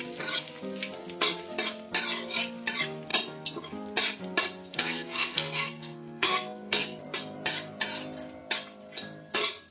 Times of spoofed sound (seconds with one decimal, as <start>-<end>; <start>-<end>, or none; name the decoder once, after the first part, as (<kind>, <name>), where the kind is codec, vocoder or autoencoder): 4.7-7.0 (codec, SNAC)